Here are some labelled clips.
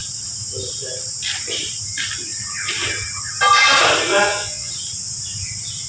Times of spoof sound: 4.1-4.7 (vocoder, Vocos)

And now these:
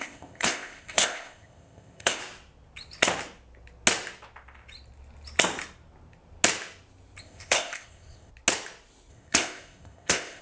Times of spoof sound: 0.0-2.2 (codec, ZipCodec); 7.2-8.3; 9.1-10.4

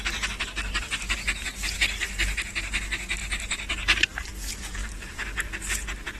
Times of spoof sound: 3.2-4.3 (vocoder, BigVGAN v2); 4.8-5.5